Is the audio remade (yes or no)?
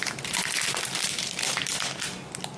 no